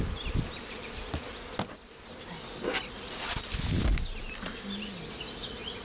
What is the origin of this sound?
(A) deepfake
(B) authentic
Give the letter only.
B